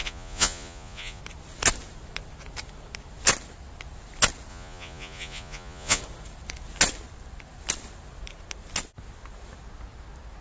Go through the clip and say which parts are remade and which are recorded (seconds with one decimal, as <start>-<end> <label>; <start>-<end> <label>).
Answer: 0.0-1.2 remade; 1.2-4.5 recorded; 4.5-6.0 remade; 6.0-10.4 recorded